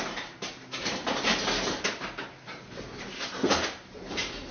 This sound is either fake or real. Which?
fake